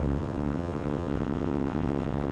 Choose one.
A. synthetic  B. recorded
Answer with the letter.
A